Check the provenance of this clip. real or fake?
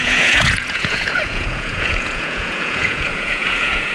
fake